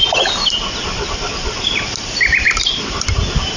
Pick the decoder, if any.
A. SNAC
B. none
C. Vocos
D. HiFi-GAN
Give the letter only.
B